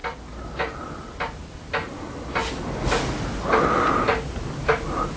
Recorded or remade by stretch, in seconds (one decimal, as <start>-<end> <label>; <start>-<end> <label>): 0.0-5.2 recorded